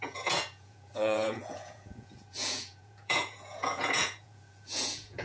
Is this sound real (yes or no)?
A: no